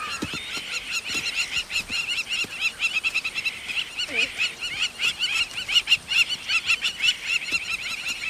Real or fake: real